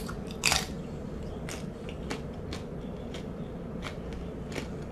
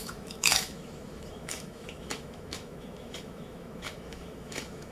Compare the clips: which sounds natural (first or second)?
first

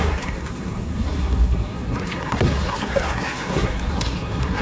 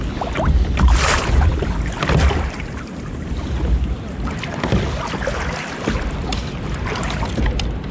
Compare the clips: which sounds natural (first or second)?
second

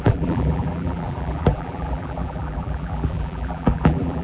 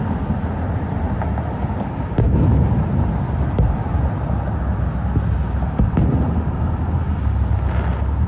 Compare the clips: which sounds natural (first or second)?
second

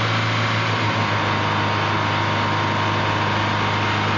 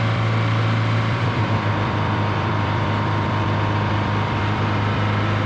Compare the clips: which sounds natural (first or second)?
first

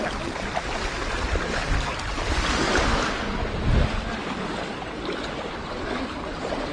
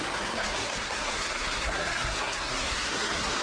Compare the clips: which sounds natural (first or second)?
first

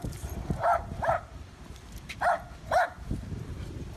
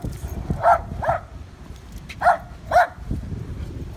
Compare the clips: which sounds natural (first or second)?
second